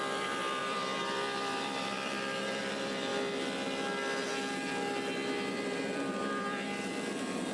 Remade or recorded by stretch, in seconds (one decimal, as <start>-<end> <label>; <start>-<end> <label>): 0.0-3.1 remade; 3.1-5.5 recorded; 5.5-7.5 remade